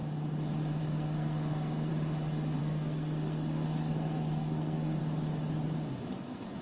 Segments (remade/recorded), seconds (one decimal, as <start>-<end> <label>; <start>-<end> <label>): 0.0-0.8 recorded; 0.8-1.9 remade; 1.9-2.6 recorded; 2.6-5.0 remade; 5.0-6.1 recorded; 6.1-6.6 remade